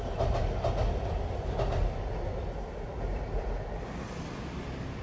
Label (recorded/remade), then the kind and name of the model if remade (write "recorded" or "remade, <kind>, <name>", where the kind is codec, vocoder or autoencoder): recorded